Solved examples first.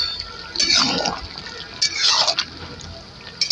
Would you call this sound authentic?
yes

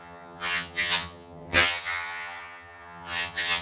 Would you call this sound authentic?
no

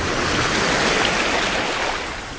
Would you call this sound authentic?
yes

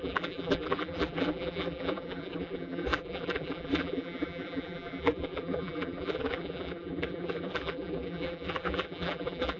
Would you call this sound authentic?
no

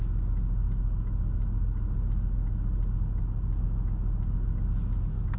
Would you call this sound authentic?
yes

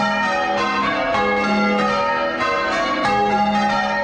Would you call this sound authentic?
yes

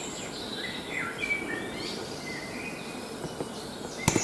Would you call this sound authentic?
yes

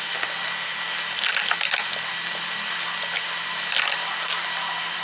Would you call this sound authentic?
yes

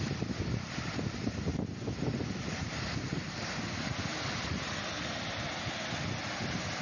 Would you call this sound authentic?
yes